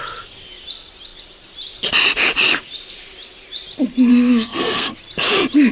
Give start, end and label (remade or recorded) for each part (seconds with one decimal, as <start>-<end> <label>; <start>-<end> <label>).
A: 0.0-4.1 recorded; 4.1-5.0 remade; 5.0-5.7 recorded